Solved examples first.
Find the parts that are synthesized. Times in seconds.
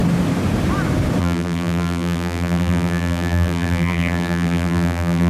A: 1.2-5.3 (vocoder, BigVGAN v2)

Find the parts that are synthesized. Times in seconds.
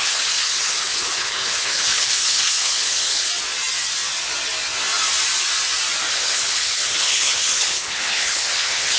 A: 0.0-3.3 (codec, HILCodec); 6.1-9.0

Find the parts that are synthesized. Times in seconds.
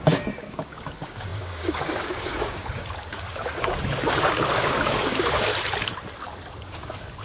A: 0.0-5.5 (codec, DAC); 6.6-7.2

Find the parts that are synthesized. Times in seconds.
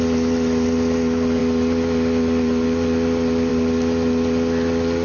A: none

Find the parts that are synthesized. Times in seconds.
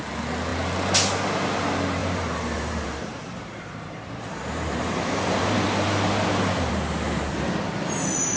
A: 2.0-6.7 (vocoder, BigVGAN v2)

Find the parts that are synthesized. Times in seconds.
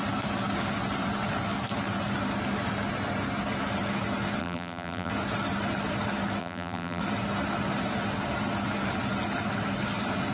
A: 4.4-5.1 (vocoder, BigVGAN v2); 6.4-7.0